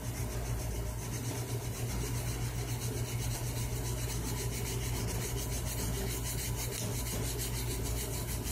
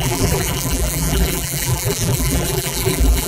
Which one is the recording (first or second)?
first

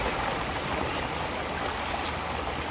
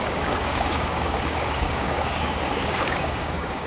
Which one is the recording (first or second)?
first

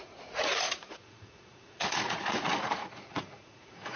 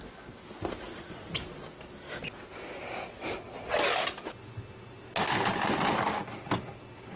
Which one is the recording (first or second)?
second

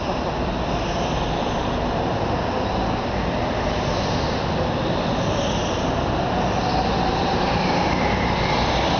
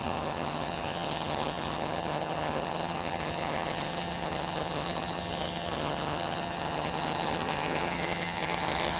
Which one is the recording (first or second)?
first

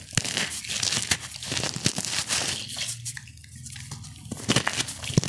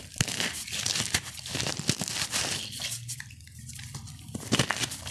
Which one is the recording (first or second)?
first